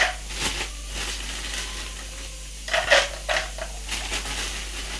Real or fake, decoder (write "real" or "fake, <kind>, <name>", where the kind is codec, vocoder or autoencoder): real